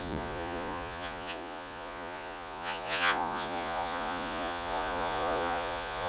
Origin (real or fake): fake